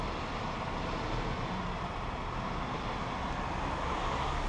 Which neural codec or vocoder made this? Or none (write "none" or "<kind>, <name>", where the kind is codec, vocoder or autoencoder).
none